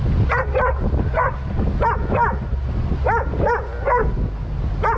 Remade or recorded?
recorded